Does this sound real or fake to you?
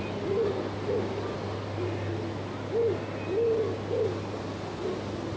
real